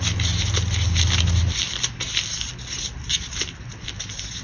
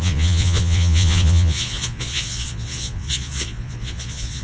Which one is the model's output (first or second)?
second